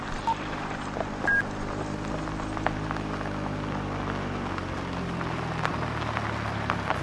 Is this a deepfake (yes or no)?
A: no